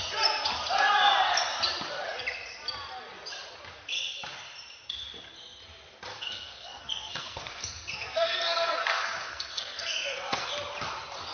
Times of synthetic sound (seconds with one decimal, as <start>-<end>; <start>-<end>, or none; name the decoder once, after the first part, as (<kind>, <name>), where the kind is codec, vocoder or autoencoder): 6.1-10.5 (codec, SNAC)